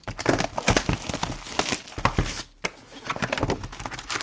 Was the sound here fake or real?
real